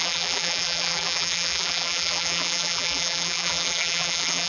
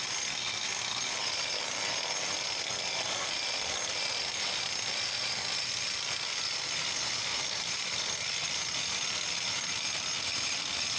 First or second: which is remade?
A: first